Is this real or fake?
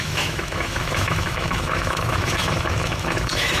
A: fake